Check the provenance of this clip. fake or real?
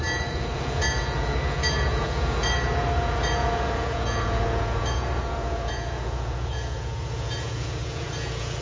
fake